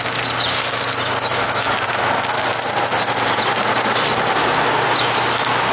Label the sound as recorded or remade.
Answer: recorded